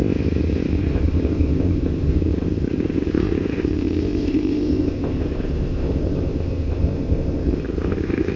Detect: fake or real fake